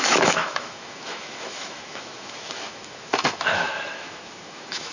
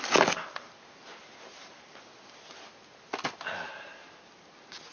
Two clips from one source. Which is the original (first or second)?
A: second